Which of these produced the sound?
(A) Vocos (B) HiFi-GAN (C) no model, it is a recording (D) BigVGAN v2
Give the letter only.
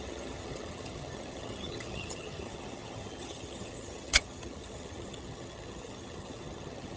B